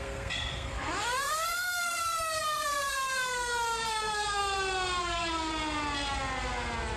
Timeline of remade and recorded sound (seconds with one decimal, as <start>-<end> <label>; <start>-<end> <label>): 0.0-4.4 remade; 4.4-5.0 recorded; 5.0-5.5 remade; 5.5-7.0 recorded

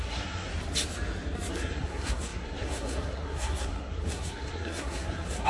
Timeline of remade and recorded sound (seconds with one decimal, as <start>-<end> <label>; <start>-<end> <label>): 0.0-0.5 remade; 0.5-1.5 recorded; 1.5-5.5 remade